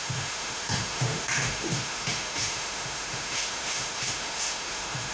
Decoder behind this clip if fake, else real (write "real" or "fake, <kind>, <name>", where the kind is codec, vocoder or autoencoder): fake, autoencoder, DAC-VAE